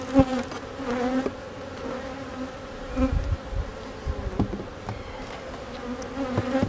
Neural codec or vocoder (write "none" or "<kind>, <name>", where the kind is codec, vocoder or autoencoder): none